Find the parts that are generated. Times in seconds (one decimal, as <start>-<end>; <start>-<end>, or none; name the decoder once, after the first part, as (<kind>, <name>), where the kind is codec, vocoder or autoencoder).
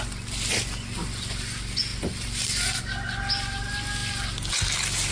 none